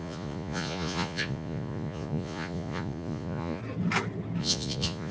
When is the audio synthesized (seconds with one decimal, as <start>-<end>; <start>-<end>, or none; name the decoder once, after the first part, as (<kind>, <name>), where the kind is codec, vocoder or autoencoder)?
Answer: 0.0-3.6 (vocoder, Vocos); 4.4-5.1